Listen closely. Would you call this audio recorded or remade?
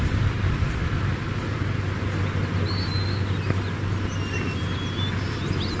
recorded